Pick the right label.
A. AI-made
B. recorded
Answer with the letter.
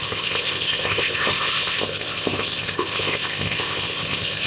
A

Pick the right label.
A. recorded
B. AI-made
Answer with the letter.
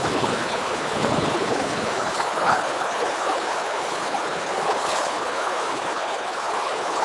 B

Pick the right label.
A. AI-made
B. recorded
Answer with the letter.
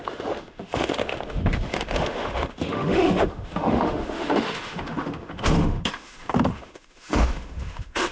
A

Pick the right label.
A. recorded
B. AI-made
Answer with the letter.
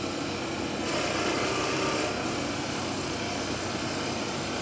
A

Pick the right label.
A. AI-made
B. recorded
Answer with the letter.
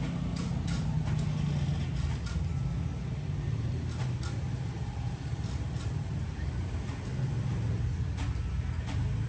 B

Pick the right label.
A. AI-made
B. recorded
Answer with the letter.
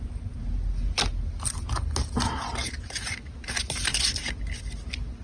B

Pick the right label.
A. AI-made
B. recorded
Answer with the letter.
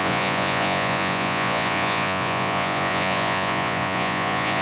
A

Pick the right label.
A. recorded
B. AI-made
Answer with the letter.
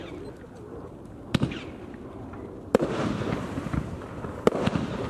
A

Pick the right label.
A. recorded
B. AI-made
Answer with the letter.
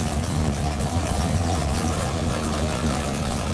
B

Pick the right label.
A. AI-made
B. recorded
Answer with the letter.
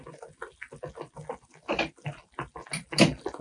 B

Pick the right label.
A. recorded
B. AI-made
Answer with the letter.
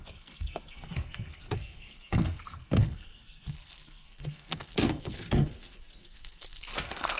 B